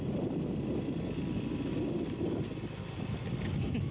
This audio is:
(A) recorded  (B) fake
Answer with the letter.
A